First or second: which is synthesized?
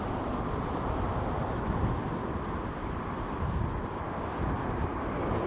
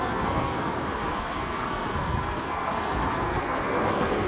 second